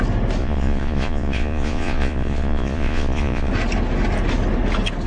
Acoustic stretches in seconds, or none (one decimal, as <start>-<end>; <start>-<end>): 0.0-0.4; 3.5-5.1